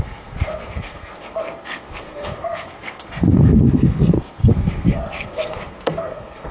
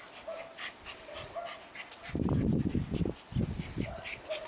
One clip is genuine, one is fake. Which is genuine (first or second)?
second